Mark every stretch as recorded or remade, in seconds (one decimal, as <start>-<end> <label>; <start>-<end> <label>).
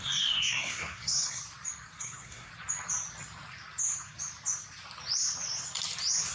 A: 0.0-1.4 remade; 1.4-2.0 recorded; 2.0-2.5 remade; 2.5-6.3 recorded